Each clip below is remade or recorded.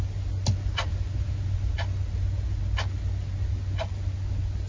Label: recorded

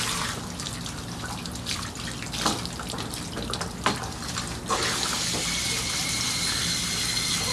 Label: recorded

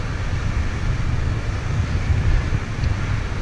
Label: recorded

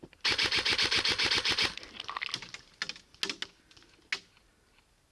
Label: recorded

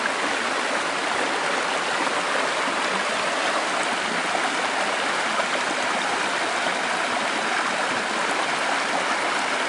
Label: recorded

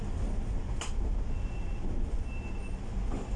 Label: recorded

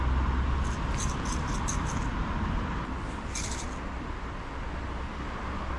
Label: recorded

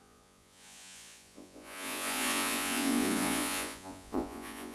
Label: remade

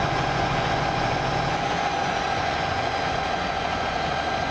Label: remade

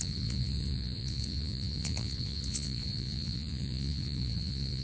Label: remade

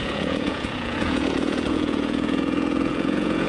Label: remade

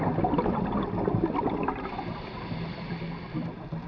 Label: recorded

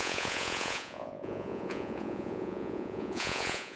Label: remade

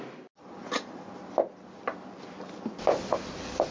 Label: recorded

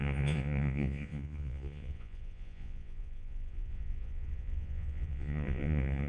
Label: remade